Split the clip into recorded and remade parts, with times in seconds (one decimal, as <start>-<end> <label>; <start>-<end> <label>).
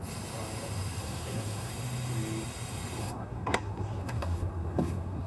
0.0-1.0 recorded; 1.0-1.7 remade; 1.7-3.0 recorded; 3.0-5.3 remade